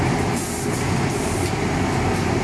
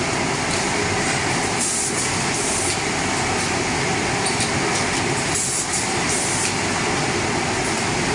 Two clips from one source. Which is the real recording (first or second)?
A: first